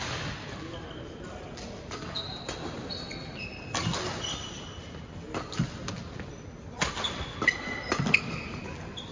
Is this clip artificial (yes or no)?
no